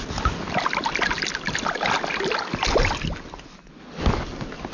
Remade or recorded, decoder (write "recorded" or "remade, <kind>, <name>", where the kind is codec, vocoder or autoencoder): recorded